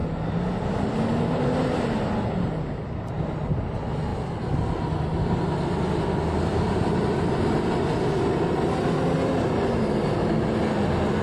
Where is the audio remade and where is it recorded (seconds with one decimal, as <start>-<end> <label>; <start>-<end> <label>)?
0.0-6.5 recorded; 6.5-7.8 remade; 7.8-11.2 recorded

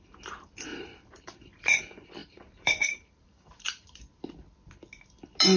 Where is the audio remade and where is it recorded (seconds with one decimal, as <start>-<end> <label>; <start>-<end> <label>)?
0.0-0.7 recorded; 0.7-1.8 remade; 1.8-2.2 recorded; 2.2-4.0 remade; 4.0-5.6 recorded

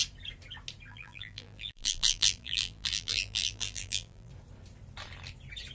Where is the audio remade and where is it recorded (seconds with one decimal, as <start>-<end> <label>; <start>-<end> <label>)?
0.0-0.9 recorded; 0.9-4.3 remade; 4.3-5.7 recorded

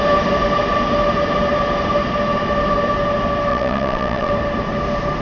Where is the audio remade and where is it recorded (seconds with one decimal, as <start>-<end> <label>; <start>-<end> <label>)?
0.0-3.5 recorded; 3.5-4.3 remade; 4.3-5.2 recorded

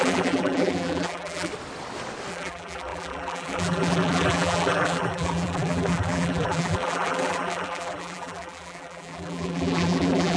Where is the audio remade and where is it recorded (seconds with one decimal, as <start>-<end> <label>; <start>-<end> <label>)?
0.0-1.5 remade; 1.5-2.3 recorded; 2.3-10.4 remade

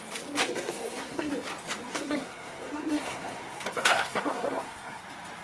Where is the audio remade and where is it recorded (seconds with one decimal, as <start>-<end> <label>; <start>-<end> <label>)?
0.0-0.4 recorded; 0.4-1.3 remade; 1.3-1.9 recorded; 1.9-5.0 remade; 5.0-5.4 recorded

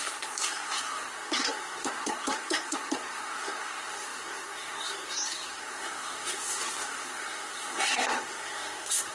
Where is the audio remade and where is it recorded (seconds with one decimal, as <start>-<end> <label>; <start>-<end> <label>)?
0.0-9.1 remade

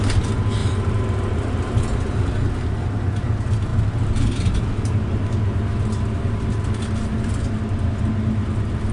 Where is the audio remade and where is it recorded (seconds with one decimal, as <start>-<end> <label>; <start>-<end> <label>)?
0.0-0.6 recorded; 0.6-1.8 remade; 1.8-8.9 recorded